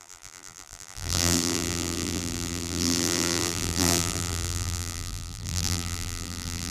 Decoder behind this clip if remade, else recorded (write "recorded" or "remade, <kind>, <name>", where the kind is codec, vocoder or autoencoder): remade, vocoder, BigVGAN v2